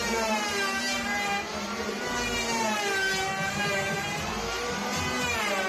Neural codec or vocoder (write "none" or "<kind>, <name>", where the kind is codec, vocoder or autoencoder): vocoder, BigVGAN v2